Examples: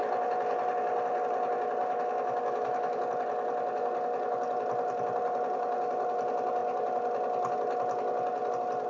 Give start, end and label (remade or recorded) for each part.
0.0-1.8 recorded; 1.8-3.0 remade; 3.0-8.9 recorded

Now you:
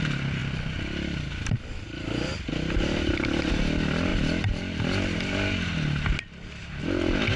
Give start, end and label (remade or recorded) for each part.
0.0-7.4 recorded

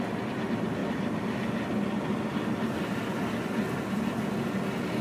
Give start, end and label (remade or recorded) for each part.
0.0-5.0 recorded

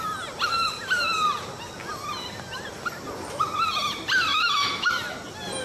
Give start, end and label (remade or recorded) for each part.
0.0-4.3 recorded; 4.3-4.9 remade; 4.9-5.6 recorded

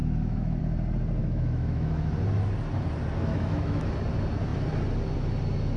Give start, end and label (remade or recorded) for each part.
0.0-0.6 remade; 0.6-1.2 recorded; 1.2-2.1 remade; 2.1-3.3 recorded; 3.3-3.9 remade; 3.9-5.8 recorded

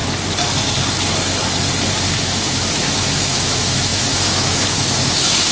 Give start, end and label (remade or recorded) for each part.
0.0-2.1 recorded; 2.1-5.5 remade

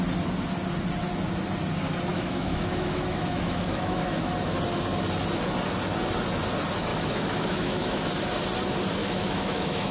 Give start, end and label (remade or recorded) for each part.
0.0-2.1 recorded; 2.1-4.3 remade; 4.3-6.9 recorded; 6.9-8.1 remade; 8.1-9.0 recorded; 9.0-9.9 remade

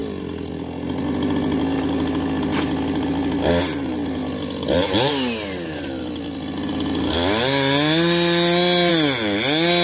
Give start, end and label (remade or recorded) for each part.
0.0-9.8 recorded